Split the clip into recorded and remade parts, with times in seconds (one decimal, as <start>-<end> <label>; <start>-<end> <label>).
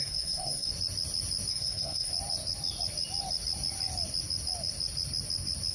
0.0-0.7 remade; 0.7-1.5 recorded; 1.5-2.1 remade; 2.1-5.7 recorded